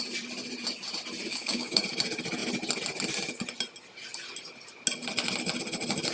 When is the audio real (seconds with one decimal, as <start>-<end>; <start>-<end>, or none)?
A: 0.0-1.3; 1.8-6.1